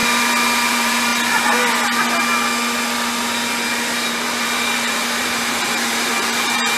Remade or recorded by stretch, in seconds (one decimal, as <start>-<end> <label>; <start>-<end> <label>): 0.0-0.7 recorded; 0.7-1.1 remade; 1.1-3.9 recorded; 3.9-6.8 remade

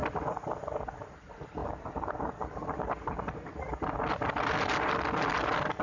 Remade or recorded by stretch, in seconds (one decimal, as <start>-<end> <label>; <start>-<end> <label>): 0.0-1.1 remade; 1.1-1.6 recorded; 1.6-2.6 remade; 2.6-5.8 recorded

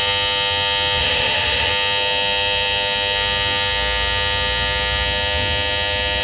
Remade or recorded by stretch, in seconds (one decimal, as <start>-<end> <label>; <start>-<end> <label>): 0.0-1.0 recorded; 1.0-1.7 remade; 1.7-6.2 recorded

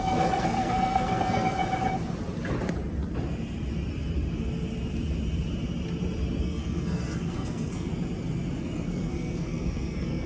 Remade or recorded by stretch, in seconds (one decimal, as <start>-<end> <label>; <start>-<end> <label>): 0.0-1.6 remade; 1.6-6.4 recorded; 6.4-7.9 remade; 7.9-8.6 recorded; 8.6-10.3 remade

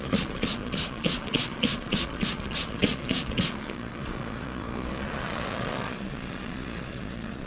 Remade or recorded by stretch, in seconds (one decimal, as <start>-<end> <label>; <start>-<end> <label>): 0.0-7.5 remade

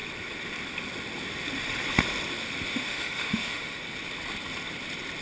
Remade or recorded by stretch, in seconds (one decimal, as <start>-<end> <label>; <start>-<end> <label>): 0.0-2.7 recorded; 2.7-3.8 remade; 3.8-5.2 recorded

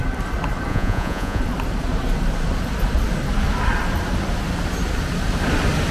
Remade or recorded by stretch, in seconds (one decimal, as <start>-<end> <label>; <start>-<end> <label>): 0.0-0.7 recorded; 0.7-1.4 remade; 1.4-5.9 recorded